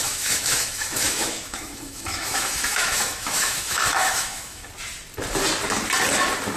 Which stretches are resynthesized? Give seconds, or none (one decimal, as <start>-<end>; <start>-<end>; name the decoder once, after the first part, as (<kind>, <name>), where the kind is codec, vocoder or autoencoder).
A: 0.0-4.6 (autoencoder, DAC-VAE)